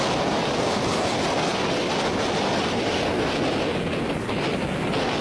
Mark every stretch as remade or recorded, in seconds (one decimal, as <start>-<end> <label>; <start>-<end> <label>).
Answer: 0.0-5.2 recorded